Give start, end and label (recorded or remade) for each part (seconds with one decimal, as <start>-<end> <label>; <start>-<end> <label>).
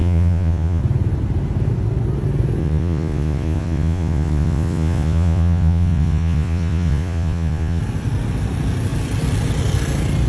0.0-0.8 remade; 0.8-2.6 recorded; 2.6-7.8 remade; 7.8-10.3 recorded